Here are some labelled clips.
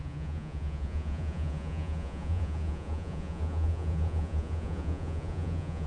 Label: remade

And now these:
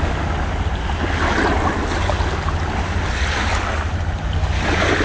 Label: recorded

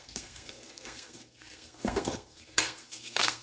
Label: remade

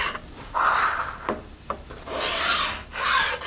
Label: recorded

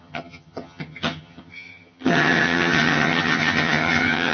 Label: remade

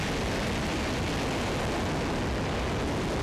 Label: recorded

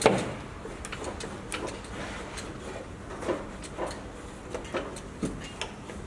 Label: recorded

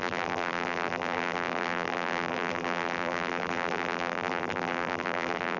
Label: remade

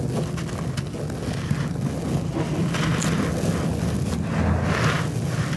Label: recorded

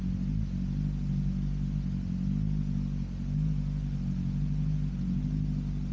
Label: recorded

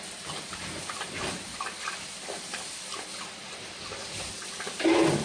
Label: recorded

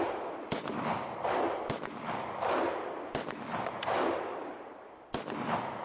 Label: recorded